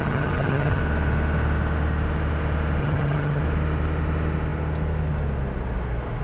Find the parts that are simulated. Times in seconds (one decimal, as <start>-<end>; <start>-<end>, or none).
0.0-0.8; 2.8-3.4